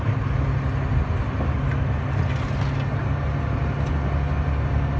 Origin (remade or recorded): recorded